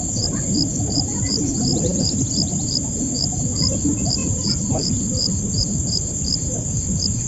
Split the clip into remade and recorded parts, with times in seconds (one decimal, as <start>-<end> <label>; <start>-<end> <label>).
0.0-4.2 recorded; 4.2-6.1 remade; 6.1-7.3 recorded